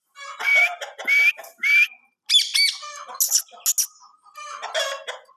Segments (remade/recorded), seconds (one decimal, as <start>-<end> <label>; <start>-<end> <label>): 0.0-5.4 recorded